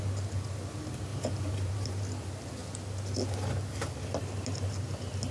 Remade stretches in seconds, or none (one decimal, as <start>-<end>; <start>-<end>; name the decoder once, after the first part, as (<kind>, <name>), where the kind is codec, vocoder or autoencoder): 1.1-2.0 (vocoder, BigVGAN v2)